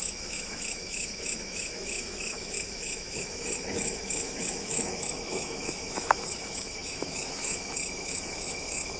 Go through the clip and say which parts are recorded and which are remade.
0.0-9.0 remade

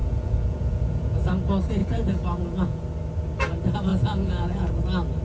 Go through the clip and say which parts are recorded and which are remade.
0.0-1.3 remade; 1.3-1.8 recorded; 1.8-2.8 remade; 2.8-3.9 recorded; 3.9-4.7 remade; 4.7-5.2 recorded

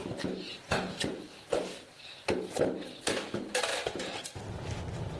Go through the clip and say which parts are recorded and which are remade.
0.0-5.2 recorded

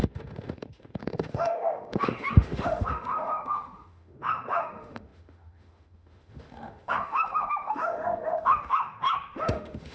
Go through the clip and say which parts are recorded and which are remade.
0.0-9.9 remade